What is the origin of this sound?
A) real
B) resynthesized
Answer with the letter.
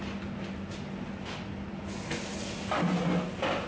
A